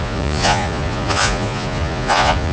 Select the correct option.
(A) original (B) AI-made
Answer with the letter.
B